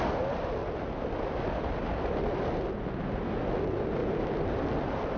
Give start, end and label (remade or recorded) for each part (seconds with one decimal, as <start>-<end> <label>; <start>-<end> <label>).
0.0-4.0 recorded; 4.0-4.7 remade; 4.7-5.2 recorded